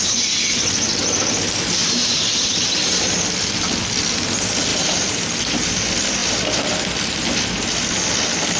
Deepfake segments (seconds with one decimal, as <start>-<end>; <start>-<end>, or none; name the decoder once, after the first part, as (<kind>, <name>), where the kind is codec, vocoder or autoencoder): 1.8-3.2 (vocoder, BigVGAN v2); 4.7-5.7; 6.2-6.8